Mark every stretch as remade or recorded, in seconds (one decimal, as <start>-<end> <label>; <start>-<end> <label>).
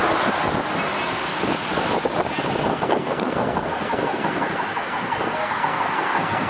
0.0-2.7 recorded; 2.7-6.5 remade